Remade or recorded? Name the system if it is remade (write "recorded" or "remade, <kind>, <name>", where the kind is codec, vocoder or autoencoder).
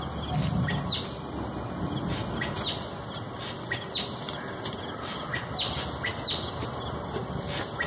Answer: recorded